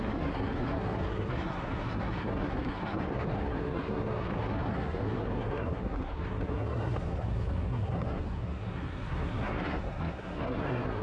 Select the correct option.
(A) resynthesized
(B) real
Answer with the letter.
A